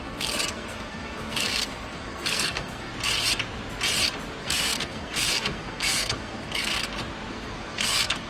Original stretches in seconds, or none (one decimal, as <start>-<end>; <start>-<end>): 2.9-4.4; 6.7-7.3